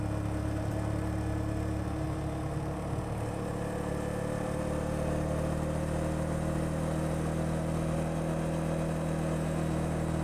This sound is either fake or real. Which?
real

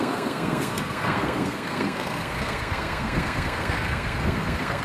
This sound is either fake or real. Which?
fake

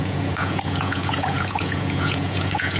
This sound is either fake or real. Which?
fake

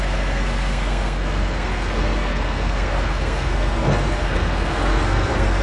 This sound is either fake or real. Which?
fake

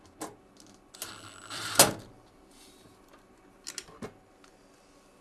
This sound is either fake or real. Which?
real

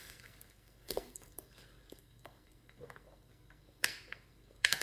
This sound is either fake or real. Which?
fake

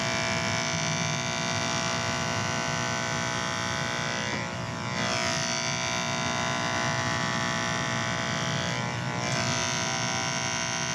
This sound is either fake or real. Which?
real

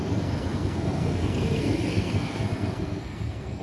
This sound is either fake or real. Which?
fake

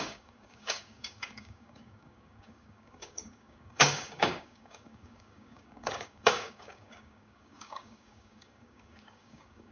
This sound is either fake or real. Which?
fake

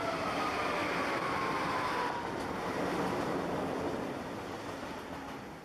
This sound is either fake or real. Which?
real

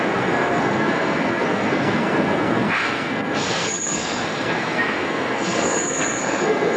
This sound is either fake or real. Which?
fake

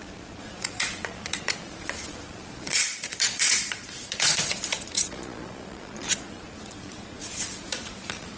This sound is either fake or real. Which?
fake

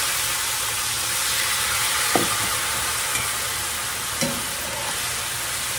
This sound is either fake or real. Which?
real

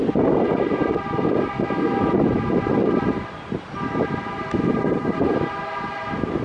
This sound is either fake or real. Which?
real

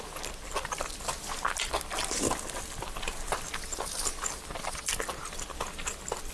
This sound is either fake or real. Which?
real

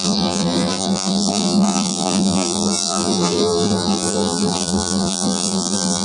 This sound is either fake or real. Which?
fake